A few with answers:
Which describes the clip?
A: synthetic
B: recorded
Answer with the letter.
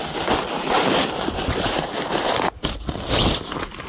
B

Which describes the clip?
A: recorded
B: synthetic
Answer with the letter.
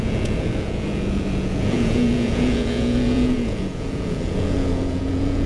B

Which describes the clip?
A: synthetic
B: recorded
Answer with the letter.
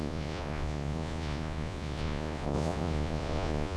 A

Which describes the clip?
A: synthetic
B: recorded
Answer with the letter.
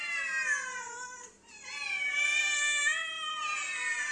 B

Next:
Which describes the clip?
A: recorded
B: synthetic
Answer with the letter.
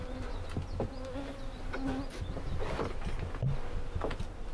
A